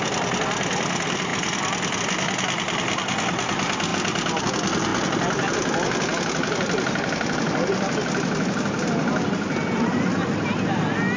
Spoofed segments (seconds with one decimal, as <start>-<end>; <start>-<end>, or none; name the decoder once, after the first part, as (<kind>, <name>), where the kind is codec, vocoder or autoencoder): none